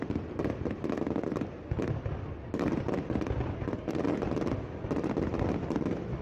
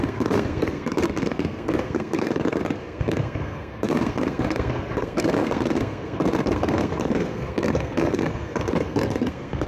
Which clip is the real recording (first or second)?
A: first